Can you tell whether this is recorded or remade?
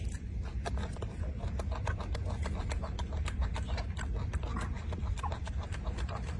recorded